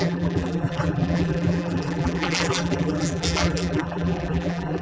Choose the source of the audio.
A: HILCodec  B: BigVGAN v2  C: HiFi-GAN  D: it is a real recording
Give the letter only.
B